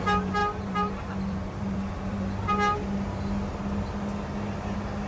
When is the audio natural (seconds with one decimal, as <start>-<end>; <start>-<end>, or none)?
0.0-0.4; 2.5-5.1